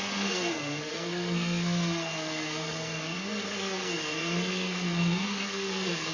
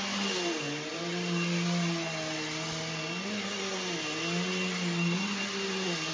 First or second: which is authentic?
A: second